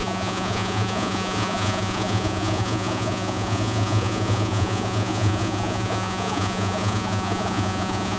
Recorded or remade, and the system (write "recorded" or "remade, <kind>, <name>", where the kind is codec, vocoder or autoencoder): remade, vocoder, Vocos